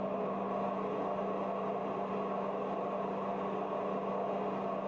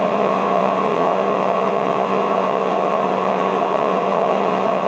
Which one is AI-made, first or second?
second